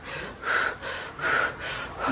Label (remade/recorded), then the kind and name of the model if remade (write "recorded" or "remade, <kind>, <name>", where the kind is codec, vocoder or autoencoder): recorded